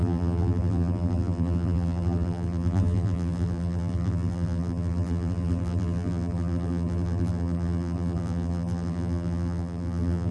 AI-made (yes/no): yes